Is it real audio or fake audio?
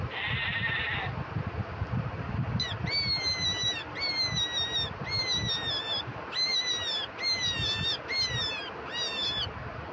real